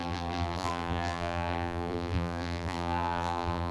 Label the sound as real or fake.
fake